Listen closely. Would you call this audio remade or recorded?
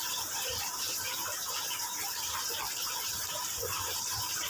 remade